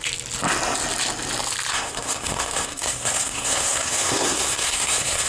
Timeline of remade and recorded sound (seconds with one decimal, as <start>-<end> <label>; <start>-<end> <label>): 0.0-1.7 recorded; 1.7-5.3 remade